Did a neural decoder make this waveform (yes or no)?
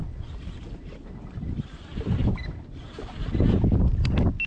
no